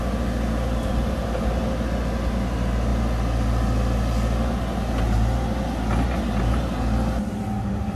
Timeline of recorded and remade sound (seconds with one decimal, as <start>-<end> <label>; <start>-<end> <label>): 0.0-8.0 recorded